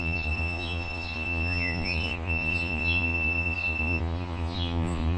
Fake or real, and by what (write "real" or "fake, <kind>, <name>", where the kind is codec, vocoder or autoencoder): fake, vocoder, Vocos